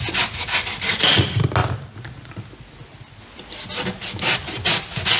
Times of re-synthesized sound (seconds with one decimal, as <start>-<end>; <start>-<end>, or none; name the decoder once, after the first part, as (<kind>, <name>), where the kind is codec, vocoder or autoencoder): none